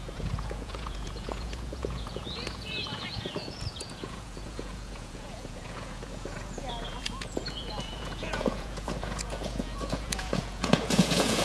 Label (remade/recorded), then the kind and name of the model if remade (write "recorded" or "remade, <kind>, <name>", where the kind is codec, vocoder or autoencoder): remade, vocoder, Vocos